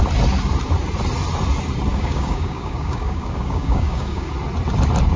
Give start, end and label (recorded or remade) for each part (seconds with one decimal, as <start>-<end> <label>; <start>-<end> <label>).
0.0-1.9 recorded; 1.9-4.3 remade; 4.3-5.2 recorded